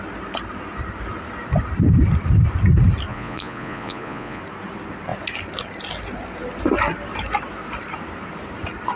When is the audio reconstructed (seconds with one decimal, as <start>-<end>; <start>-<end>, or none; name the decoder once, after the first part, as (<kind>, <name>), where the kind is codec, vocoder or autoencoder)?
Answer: 3.1-4.4 (vocoder, Vocos)